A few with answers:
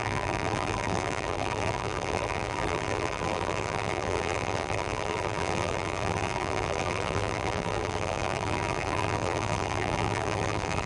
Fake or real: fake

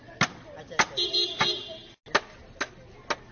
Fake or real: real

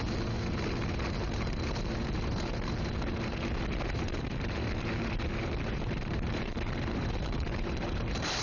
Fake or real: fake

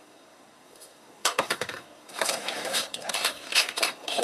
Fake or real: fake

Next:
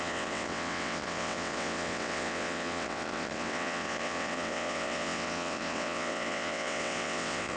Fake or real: fake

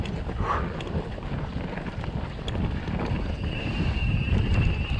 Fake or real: real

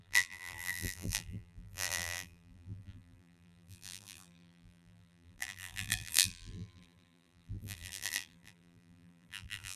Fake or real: fake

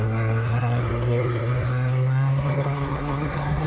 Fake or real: fake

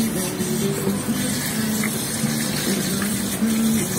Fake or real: real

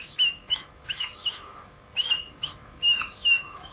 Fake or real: fake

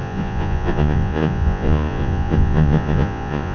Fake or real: fake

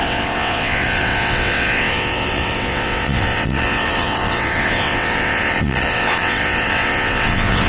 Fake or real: fake